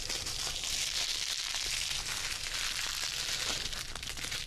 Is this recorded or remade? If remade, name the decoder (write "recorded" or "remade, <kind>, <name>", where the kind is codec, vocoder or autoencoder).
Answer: recorded